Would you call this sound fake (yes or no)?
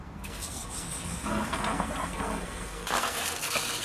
yes